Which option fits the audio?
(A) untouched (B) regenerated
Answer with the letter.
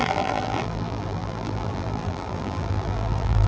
B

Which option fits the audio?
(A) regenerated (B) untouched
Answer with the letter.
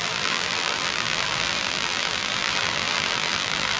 A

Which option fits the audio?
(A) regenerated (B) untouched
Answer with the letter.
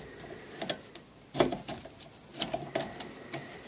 B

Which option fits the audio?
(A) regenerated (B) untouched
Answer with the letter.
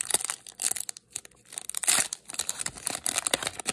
B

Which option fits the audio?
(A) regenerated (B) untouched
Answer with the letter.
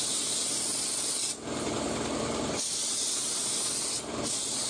A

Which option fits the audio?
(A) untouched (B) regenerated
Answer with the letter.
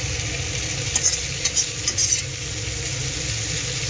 A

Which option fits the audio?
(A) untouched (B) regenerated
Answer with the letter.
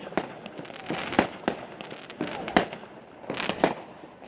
A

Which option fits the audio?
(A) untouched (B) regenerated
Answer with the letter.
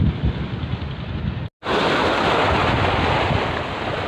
A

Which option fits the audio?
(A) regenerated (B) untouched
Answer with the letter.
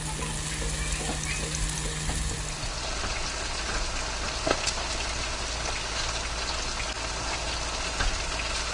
B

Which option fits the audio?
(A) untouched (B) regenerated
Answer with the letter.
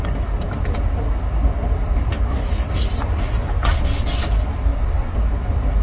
A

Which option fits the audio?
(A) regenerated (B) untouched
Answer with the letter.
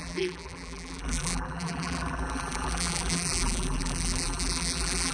A